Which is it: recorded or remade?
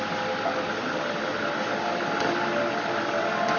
recorded